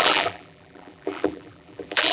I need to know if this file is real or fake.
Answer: fake